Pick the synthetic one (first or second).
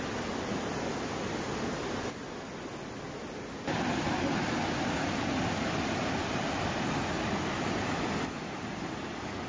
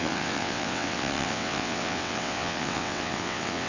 second